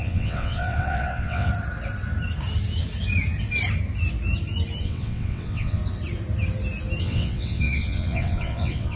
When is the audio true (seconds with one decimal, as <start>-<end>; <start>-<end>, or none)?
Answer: 1.5-4.8; 5.8-7.0